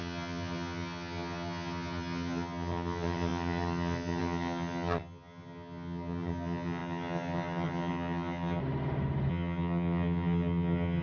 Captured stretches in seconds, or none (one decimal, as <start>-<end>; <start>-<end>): 8.6-9.3